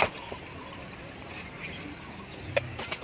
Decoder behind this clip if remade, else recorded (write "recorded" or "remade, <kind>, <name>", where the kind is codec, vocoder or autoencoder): recorded